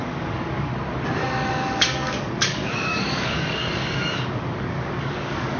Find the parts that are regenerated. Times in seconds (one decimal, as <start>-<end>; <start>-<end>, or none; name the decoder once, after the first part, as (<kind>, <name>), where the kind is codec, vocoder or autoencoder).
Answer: 0.0-0.7 (codec, DAC); 1.5-5.6